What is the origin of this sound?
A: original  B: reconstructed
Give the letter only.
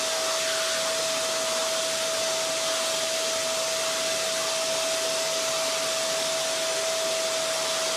A